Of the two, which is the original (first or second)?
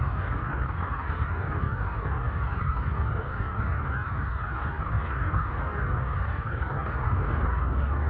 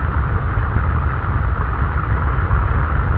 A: second